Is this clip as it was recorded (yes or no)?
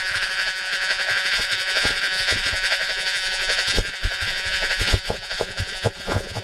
no